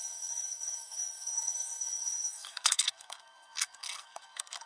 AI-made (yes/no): yes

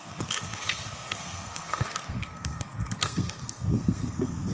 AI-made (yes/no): yes